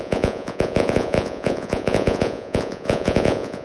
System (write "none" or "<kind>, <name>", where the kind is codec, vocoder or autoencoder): vocoder, Vocos